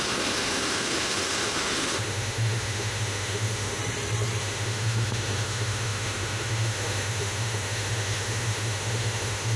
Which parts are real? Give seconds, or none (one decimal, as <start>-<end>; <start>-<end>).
3.8-4.4